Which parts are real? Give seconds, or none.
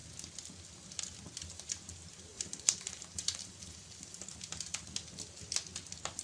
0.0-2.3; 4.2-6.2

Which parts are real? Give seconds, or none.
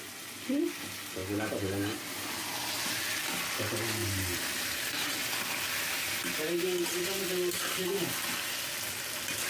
0.0-4.0; 5.3-9.5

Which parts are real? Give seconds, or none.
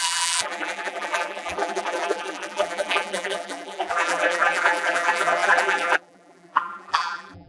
none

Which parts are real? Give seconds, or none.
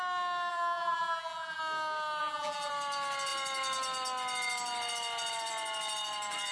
0.0-0.5; 1.6-2.2; 2.7-6.5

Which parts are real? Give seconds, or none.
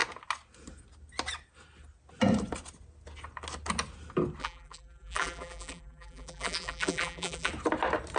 0.0-4.4; 7.5-8.2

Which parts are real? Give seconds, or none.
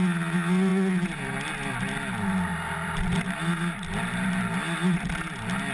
0.0-2.5; 3.2-5.7